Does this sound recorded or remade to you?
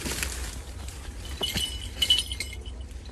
recorded